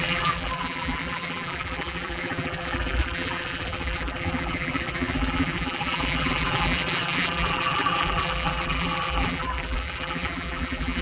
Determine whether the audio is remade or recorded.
remade